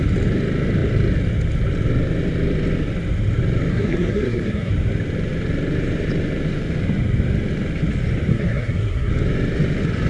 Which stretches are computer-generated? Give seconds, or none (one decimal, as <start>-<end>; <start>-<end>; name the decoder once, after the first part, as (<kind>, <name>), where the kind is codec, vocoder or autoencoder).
3.7-4.7 (codec, SNAC); 8.3-9.1